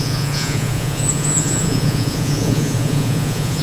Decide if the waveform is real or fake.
fake